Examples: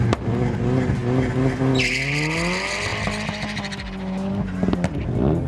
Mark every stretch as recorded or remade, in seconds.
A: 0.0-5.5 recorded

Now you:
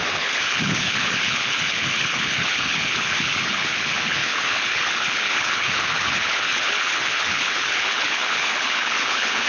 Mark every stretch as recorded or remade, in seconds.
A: 0.0-9.5 remade

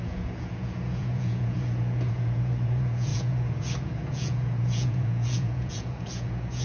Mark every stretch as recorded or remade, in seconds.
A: 0.0-6.6 remade

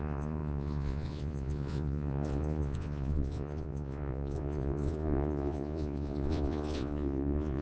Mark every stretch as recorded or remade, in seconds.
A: 0.0-7.6 remade